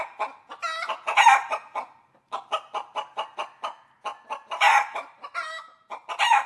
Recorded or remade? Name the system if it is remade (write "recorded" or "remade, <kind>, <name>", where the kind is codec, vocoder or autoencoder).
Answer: recorded